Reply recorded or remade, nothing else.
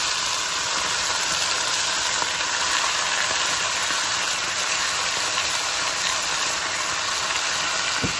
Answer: recorded